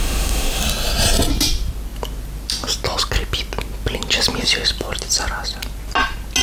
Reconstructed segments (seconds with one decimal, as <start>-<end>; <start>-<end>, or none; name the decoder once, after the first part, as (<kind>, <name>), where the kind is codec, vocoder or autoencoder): 0.0-0.6 (autoencoder, DAC-VAE)